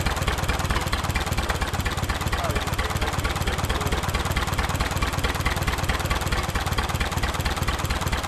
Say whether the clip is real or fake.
real